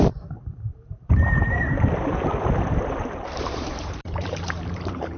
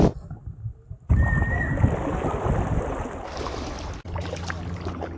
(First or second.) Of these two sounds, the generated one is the first